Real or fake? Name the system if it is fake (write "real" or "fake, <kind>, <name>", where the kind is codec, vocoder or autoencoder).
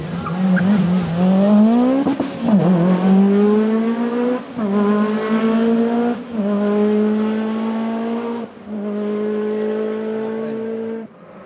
real